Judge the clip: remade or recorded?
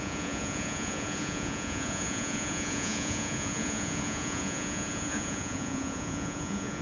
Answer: remade